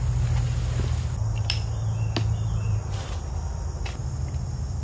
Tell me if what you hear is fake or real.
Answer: real